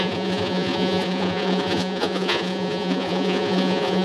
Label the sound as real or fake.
fake